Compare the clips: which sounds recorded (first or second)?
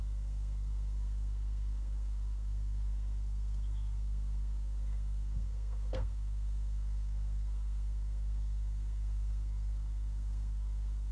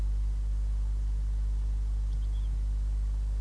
second